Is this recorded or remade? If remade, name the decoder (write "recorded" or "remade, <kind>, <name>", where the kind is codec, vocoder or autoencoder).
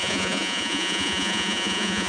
remade, vocoder, Vocos